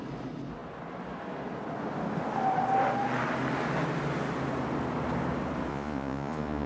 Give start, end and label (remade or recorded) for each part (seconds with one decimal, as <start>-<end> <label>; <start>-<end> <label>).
0.0-5.7 recorded; 5.7-6.7 remade